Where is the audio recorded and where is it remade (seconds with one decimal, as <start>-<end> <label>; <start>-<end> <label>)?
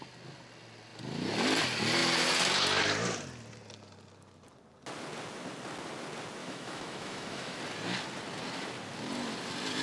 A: 0.0-6.4 recorded; 6.4-7.6 remade; 7.6-9.8 recorded